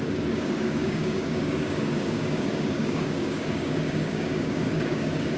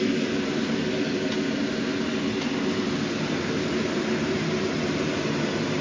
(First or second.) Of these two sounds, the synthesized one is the first